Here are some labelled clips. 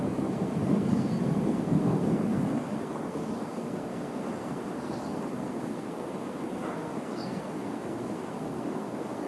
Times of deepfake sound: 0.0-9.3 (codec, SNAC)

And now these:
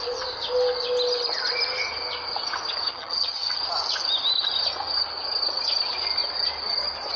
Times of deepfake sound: 2.9-3.6 (vocoder, HiFi-GAN)

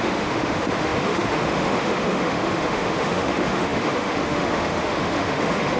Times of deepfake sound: 0.0-5.8 (autoencoder, DAC-VAE)